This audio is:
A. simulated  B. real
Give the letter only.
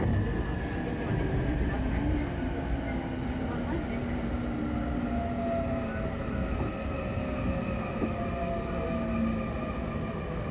B